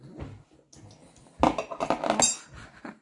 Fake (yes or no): no